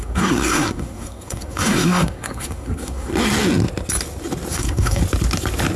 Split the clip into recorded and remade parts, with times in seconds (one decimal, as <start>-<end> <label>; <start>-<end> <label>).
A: 0.0-3.1 remade; 3.1-4.5 recorded; 4.5-5.0 remade; 5.0-5.8 recorded